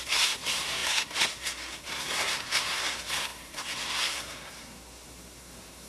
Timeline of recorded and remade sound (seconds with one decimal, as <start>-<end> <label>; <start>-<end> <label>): 0.0-5.9 remade